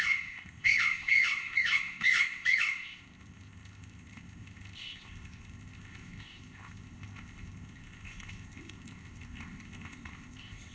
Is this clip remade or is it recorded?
remade